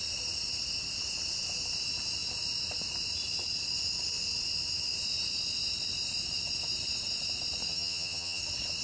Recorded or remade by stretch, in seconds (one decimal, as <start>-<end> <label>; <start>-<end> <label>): 0.0-7.7 recorded; 7.7-8.4 remade; 8.4-8.8 recorded